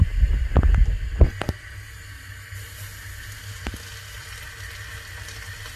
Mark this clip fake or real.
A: real